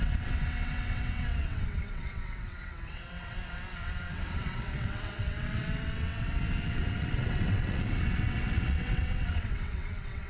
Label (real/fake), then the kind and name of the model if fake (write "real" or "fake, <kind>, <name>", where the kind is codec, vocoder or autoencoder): fake, vocoder, WaveNeXt